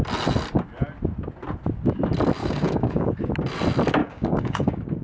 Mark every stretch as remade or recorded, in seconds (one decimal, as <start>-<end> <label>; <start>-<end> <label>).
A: 0.0-2.4 recorded; 2.4-3.1 remade; 3.1-4.0 recorded; 4.0-5.0 remade